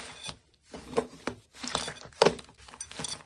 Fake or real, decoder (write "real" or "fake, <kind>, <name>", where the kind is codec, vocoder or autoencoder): real